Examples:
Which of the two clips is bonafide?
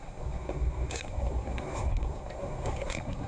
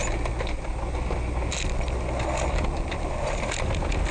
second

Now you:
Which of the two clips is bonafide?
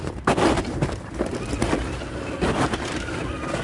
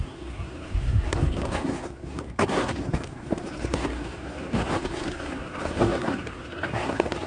first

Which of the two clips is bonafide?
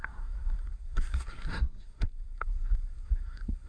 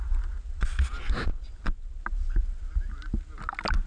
second